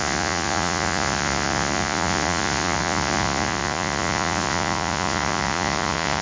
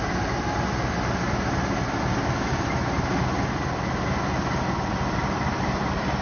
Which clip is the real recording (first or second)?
second